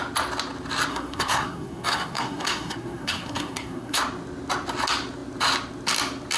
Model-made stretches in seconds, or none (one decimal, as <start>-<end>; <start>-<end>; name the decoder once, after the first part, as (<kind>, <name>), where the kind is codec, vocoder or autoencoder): 0.9-4.0 (codec, SNAC)